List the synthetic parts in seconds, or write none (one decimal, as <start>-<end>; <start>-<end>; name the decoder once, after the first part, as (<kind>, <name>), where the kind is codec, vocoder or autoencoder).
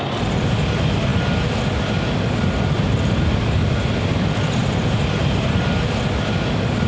4.6-5.6 (vocoder, BigVGAN v2)